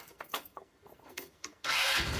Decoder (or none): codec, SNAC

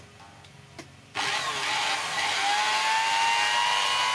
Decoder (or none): none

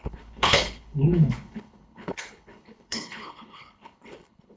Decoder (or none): codec, HILCodec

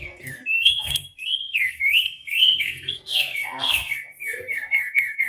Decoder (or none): codec, SNAC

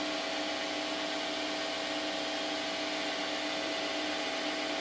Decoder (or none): none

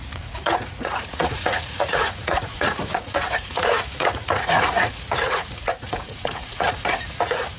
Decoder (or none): vocoder, Vocos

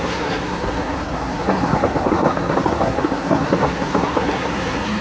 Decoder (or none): codec, SNAC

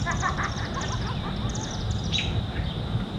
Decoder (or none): none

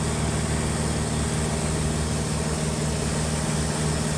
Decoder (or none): none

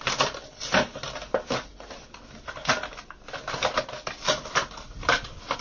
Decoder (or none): none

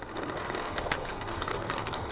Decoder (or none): codec, SNAC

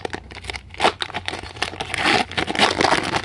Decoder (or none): none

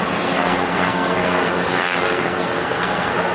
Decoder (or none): codec, SNAC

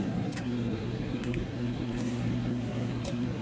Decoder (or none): codec, SNAC